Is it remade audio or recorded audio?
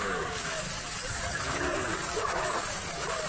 remade